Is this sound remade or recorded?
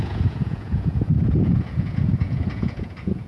remade